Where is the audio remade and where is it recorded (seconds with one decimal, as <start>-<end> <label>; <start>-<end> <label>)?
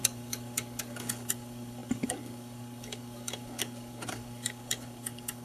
0.0-5.4 remade